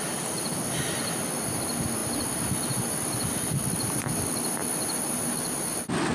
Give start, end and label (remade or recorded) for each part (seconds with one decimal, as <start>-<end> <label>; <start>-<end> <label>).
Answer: 0.0-6.1 recorded